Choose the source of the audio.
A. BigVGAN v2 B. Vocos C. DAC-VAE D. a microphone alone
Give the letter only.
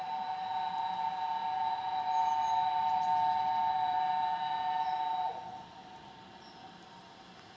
D